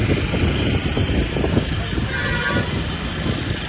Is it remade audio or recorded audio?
recorded